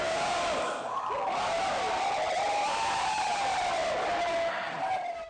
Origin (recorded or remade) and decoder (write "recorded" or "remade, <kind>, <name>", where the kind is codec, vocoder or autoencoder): recorded